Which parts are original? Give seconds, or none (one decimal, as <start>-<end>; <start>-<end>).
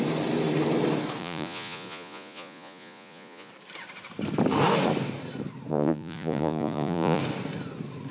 0.0-1.2; 3.5-5.7; 7.2-8.1